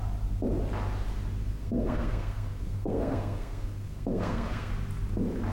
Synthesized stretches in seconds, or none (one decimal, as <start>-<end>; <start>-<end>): 1.4-4.7